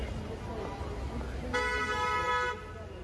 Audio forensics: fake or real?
real